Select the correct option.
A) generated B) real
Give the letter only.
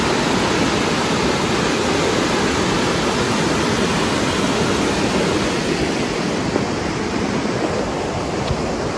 B